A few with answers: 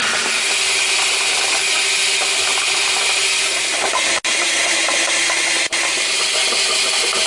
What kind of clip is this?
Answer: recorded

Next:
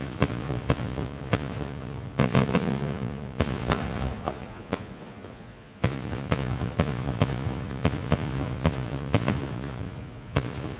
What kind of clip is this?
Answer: remade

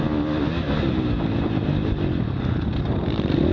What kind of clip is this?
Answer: recorded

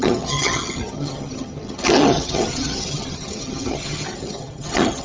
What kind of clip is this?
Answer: remade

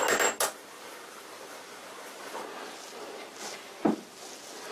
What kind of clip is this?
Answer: recorded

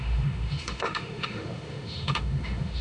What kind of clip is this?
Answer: remade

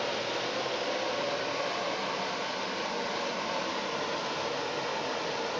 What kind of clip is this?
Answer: recorded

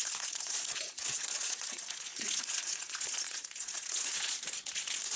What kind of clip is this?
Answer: remade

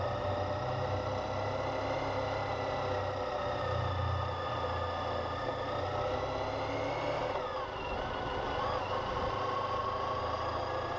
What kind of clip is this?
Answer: recorded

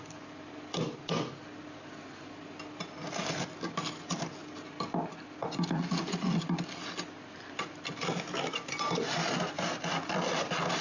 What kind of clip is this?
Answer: recorded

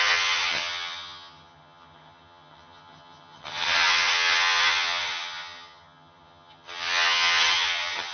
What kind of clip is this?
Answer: remade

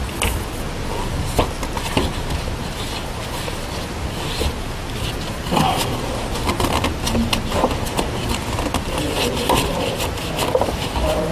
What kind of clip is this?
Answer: recorded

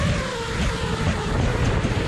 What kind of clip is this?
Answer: recorded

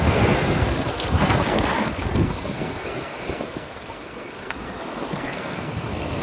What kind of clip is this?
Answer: remade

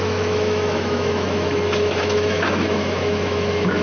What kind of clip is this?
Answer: remade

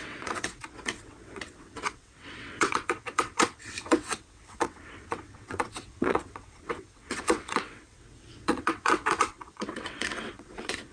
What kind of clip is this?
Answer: remade